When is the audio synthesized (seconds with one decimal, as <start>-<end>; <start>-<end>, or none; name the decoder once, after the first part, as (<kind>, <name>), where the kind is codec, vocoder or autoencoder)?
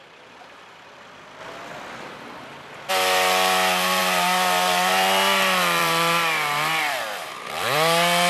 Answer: 0.0-1.4 (vocoder, BigVGAN v2); 2.9-8.3